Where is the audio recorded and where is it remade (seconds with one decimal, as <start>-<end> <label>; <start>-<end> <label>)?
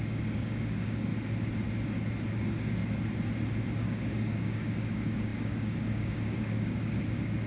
0.0-1.1 remade; 1.1-2.3 recorded; 2.3-2.8 remade; 2.8-3.8 recorded; 3.8-7.5 remade